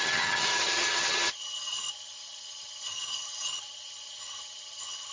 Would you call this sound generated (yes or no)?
yes